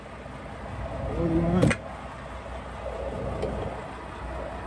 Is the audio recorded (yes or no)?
yes